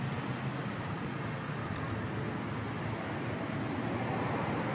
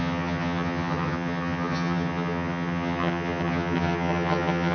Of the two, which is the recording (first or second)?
first